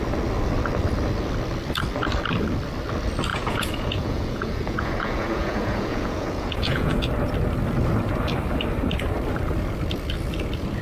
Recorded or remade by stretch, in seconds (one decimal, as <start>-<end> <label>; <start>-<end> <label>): 0.0-3.3 recorded; 3.3-6.9 remade; 6.9-10.8 recorded